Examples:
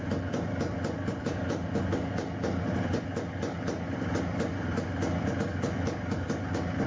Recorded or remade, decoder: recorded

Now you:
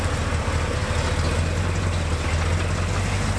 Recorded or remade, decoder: recorded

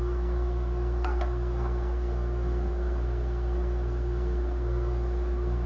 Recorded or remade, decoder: remade, codec, SNAC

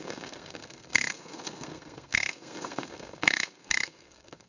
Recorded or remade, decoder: remade, codec, SNAC